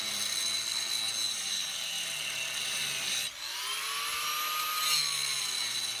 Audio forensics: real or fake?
real